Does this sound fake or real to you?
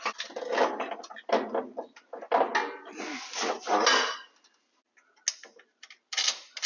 real